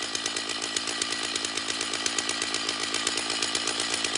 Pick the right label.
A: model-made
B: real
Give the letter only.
B